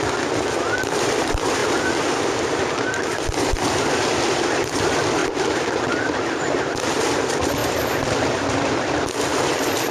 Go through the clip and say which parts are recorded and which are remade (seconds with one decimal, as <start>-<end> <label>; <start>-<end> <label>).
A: 0.0-1.6 recorded; 1.6-4.2 remade; 4.2-9.9 recorded